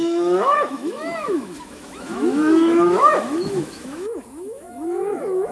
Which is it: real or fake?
fake